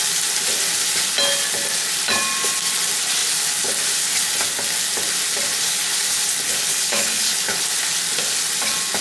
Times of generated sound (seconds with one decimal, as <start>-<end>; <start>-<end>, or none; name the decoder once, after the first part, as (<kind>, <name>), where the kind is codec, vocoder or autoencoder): 6.7-7.6 (codec, HILCodec)